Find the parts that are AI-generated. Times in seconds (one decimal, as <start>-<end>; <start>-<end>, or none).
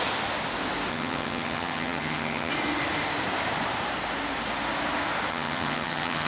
0.9-2.5; 5.3-6.3